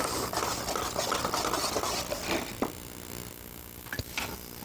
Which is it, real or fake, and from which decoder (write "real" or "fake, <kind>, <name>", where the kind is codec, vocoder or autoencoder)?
real